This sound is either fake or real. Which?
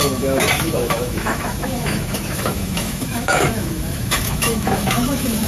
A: fake